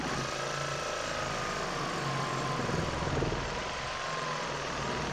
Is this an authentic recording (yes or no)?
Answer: yes